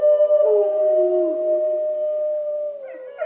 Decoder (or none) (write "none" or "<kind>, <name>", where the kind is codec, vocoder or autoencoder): none